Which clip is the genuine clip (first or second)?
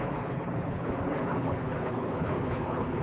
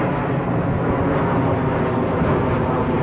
second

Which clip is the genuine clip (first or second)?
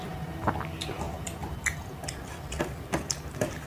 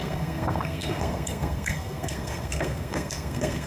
first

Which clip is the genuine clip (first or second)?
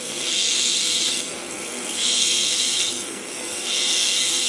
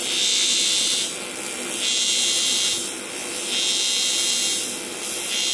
second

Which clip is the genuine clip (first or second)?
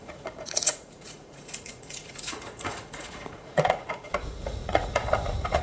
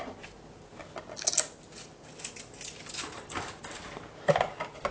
second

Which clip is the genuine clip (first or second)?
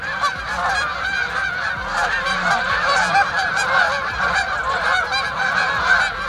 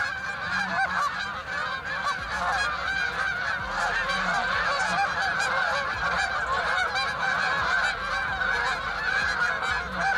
second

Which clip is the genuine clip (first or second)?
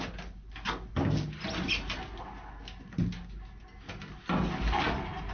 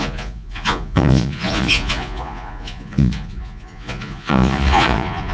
first